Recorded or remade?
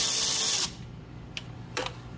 recorded